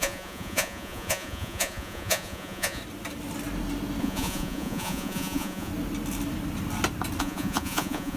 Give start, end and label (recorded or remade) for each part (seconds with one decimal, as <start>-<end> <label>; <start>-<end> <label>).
0.0-2.8 remade; 2.8-4.0 recorded; 4.0-5.7 remade; 5.7-7.2 recorded; 7.2-8.2 remade